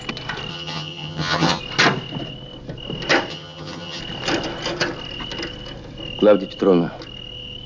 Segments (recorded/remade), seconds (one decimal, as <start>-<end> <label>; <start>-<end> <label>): 0.0-0.5 recorded; 0.5-1.6 remade; 1.6-3.3 recorded; 3.3-4.0 remade; 4.0-7.7 recorded